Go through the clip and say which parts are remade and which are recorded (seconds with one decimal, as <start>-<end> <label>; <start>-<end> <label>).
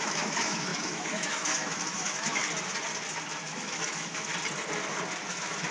0.0-2.4 remade; 2.4-3.4 recorded; 3.4-4.3 remade; 4.3-5.3 recorded; 5.3-5.7 remade